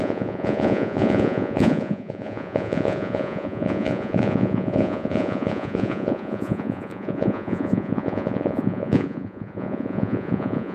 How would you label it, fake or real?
fake